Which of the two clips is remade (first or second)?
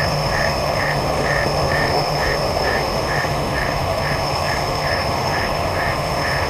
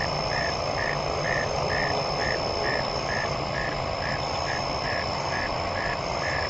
first